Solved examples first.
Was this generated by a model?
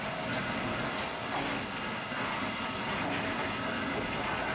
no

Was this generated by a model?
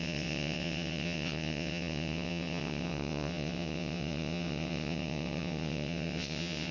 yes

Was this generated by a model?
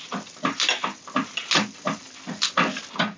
no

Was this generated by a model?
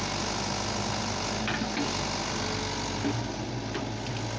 no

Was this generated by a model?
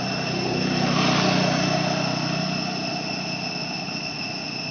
no